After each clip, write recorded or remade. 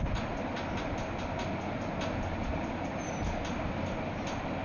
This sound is recorded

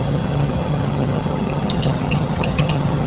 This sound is remade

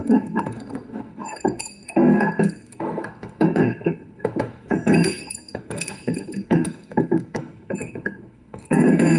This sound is remade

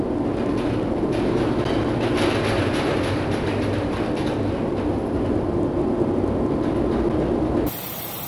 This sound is recorded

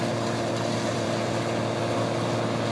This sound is remade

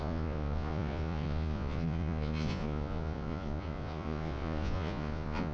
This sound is remade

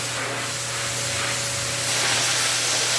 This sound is recorded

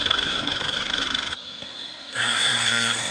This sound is remade